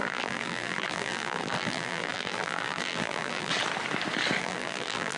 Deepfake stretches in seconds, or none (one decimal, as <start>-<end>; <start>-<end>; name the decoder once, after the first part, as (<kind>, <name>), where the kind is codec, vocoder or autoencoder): 0.0-3.5 (vocoder, BigVGAN v2); 4.4-5.2